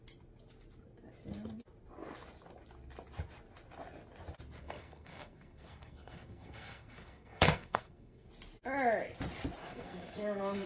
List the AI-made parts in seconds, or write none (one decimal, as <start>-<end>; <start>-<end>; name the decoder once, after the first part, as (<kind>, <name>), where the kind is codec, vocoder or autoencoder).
4.6-8.3 (codec, SNAC); 9.6-10.7